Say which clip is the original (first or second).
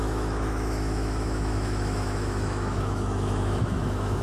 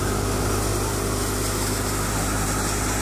second